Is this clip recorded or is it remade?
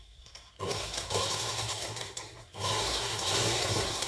remade